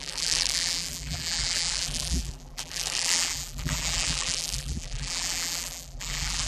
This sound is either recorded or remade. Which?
remade